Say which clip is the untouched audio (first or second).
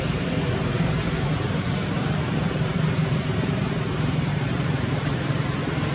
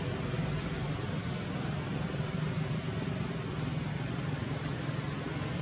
second